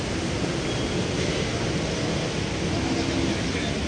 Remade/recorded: recorded